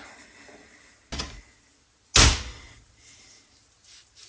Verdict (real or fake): real